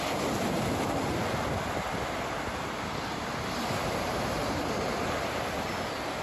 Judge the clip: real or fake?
real